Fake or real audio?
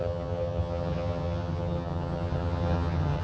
fake